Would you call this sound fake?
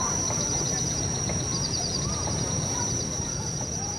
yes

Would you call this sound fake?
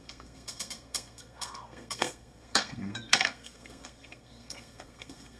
yes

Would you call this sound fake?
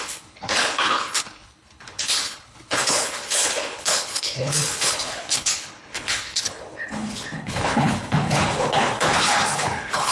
yes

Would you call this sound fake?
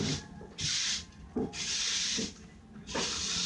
no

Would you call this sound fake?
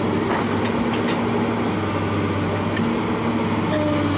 no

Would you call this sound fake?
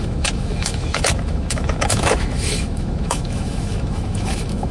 yes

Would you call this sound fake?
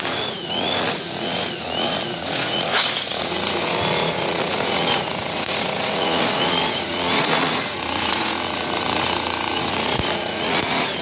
yes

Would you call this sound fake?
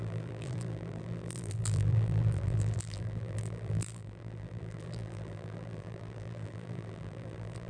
yes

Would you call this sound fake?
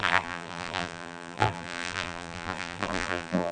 yes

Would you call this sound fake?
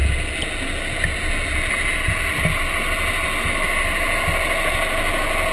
no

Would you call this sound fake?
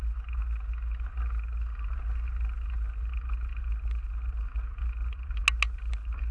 no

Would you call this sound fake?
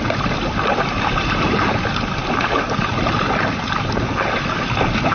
no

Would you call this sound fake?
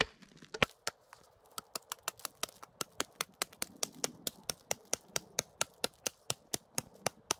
no